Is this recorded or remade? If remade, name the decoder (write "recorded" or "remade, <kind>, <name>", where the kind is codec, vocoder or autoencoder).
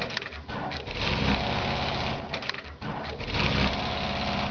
recorded